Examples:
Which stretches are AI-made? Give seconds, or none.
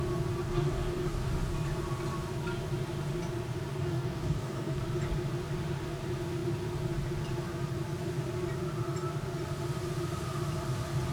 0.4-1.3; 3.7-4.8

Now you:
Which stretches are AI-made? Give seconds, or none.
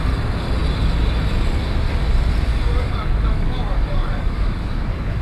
2.5-5.2